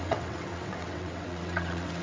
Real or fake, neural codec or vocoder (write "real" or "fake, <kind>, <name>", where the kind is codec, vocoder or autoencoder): fake, vocoder, WaveNeXt